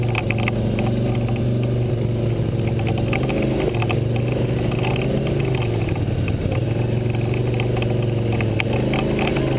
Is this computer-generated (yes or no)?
no